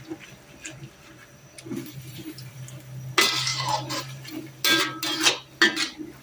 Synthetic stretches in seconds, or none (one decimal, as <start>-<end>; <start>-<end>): 1.2-2.6; 3.5-4.6